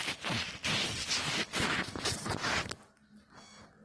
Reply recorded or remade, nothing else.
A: recorded